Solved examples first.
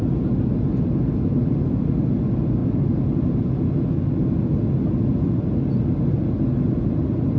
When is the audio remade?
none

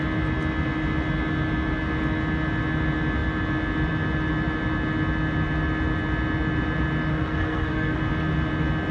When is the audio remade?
7.1-8.0

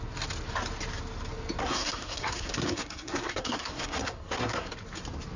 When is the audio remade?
1.6-4.7